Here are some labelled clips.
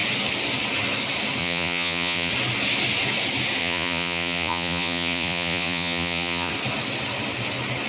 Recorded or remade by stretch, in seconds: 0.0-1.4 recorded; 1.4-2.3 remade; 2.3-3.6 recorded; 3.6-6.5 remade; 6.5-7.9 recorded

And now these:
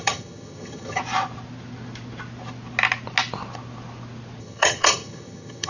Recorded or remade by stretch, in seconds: 0.0-1.0 remade; 1.0-4.4 recorded; 4.4-5.7 remade

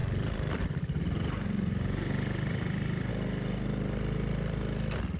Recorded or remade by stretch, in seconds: 0.0-3.1 remade; 3.1-5.2 recorded